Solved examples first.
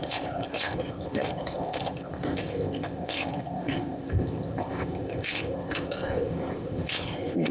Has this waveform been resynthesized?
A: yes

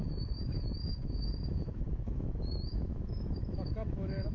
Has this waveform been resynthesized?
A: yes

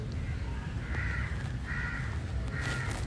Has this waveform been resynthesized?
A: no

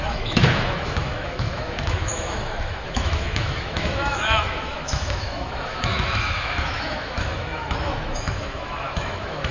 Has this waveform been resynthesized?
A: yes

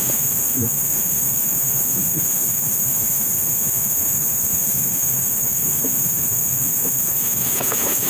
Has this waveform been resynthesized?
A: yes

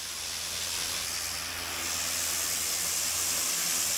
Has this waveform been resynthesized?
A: no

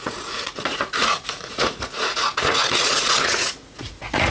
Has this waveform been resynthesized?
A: yes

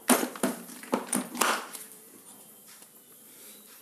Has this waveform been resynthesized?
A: yes